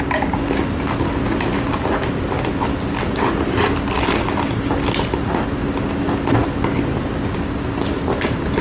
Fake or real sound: real